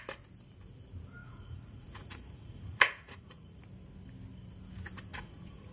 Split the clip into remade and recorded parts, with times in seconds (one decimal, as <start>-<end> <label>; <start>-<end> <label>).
0.0-1.2 recorded; 1.2-3.6 remade; 3.6-5.1 recorded; 5.1-5.7 remade